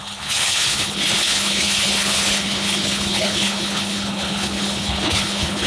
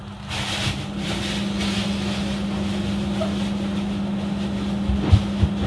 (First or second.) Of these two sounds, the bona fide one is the second